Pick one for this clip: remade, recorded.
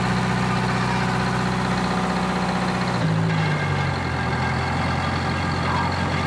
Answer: recorded